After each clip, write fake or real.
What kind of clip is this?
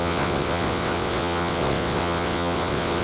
fake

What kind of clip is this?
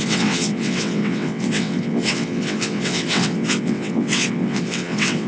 fake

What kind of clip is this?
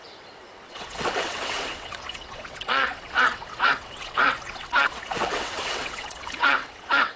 fake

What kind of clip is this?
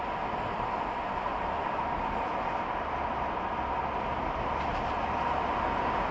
real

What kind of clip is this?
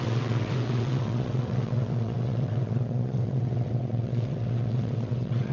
fake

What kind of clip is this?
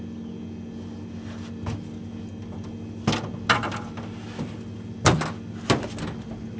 real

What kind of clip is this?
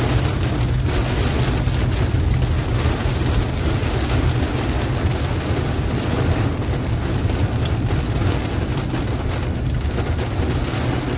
real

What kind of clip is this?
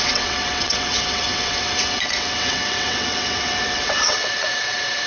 fake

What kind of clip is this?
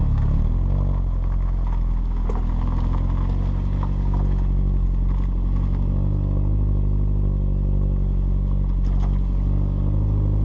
real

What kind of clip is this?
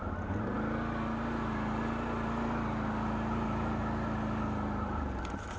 real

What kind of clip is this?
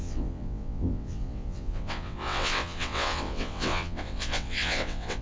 fake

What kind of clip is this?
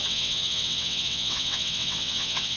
fake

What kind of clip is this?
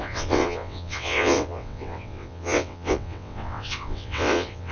fake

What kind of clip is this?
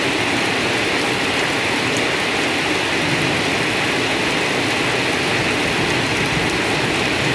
real